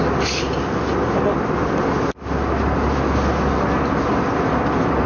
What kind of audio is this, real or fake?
real